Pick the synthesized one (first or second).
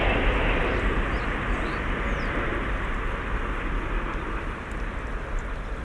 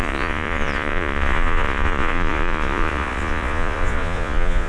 second